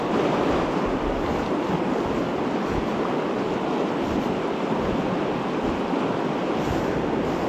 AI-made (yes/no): no